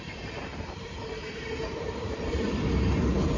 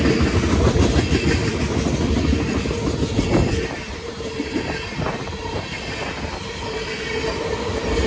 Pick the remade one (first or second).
first